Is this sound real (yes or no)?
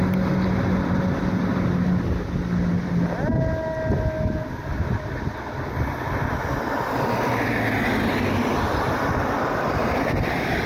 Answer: yes